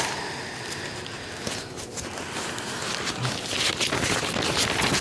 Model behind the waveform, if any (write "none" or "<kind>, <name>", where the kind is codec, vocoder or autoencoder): none